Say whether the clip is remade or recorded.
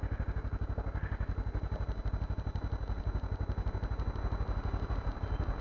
recorded